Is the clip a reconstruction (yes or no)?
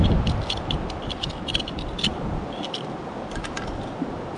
no